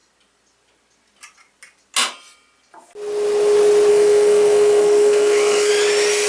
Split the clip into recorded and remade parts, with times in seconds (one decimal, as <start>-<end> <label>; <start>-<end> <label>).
0.0-3.9 recorded; 3.9-5.7 remade; 5.7-6.3 recorded